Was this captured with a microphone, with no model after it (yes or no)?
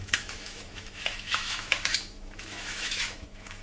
no